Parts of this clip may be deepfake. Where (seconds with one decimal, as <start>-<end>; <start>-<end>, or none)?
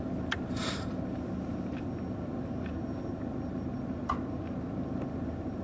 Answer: none